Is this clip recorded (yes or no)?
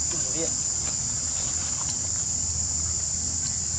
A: yes